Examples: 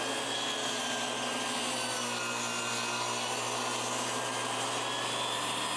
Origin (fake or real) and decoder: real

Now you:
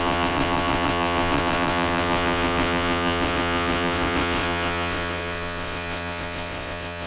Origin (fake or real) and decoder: fake, vocoder, WaveNeXt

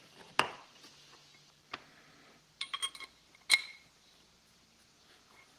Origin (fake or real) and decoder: real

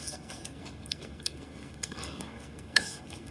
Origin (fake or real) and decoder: fake, codec, SNAC